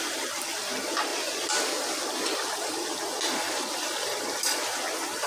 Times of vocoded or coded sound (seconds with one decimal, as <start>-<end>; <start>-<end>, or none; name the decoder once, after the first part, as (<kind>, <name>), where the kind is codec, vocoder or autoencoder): none